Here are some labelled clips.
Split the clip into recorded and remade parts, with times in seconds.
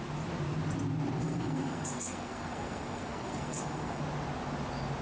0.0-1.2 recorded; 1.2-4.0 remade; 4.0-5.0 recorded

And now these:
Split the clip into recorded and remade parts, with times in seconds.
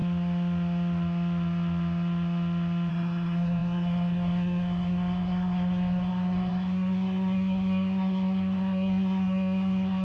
0.0-2.9 recorded; 2.9-10.0 remade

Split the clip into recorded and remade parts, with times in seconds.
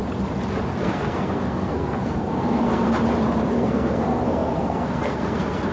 0.0-0.8 recorded; 0.8-2.9 remade; 2.9-3.5 recorded; 3.5-5.7 remade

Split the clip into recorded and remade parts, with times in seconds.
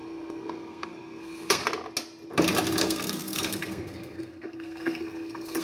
0.0-1.6 remade; 1.6-2.8 recorded; 2.8-5.6 remade